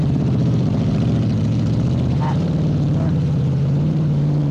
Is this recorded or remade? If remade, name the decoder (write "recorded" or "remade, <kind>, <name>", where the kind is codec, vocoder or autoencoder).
remade, vocoder, BigVGAN v2